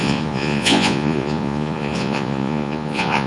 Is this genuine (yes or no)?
no